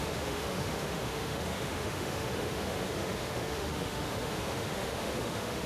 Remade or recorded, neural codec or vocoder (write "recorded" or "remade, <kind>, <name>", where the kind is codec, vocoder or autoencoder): remade, autoencoder, DAC-VAE